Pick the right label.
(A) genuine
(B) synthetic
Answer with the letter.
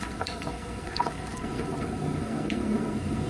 B